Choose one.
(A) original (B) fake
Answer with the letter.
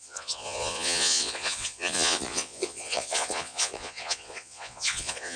B